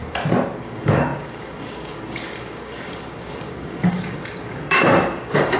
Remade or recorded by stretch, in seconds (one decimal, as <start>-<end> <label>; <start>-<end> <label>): 0.0-0.6 recorded; 0.6-5.6 remade